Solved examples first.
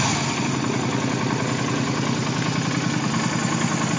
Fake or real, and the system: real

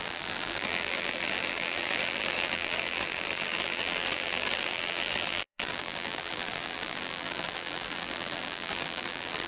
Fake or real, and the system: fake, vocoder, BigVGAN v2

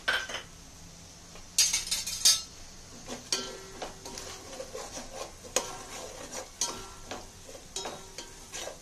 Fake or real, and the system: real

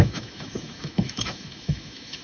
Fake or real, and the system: fake, autoencoder, DAC-VAE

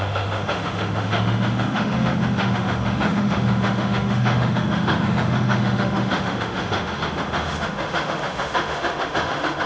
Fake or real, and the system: fake, autoencoder, DAC-VAE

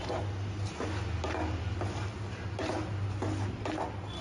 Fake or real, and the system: real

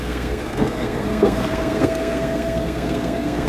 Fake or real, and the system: fake, codec, SNAC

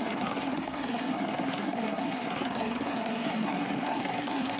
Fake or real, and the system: fake, codec, SNAC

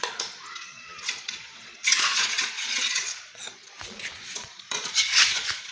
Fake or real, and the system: fake, vocoder, Vocos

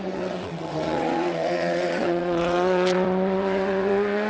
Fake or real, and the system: fake, vocoder, WaveNeXt